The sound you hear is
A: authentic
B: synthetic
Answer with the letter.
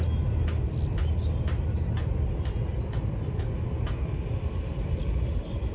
A